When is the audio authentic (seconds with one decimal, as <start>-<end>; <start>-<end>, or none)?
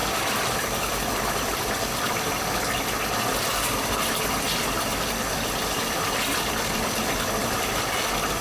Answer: 2.3-3.3; 4.3-4.9; 7.7-8.4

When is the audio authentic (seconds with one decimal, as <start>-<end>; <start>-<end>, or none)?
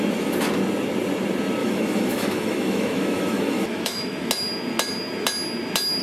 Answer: 0.0-1.6; 4.3-6.0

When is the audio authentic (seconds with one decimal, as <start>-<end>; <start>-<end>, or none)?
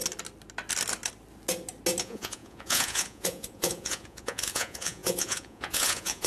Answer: 0.0-2.0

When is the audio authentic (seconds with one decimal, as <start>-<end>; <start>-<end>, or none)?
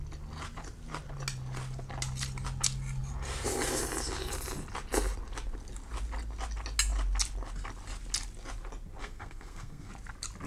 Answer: 0.0-9.0; 9.9-10.5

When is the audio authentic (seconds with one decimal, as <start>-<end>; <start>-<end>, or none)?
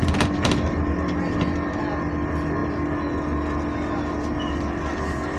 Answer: 0.0-5.4